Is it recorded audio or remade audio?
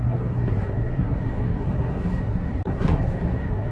remade